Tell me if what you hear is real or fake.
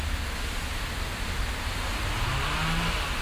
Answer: real